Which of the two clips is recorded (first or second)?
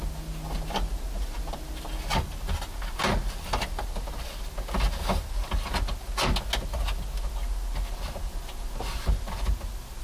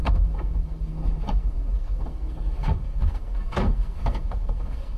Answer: first